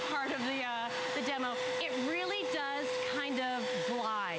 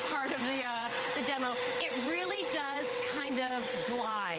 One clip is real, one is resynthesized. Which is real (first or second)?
first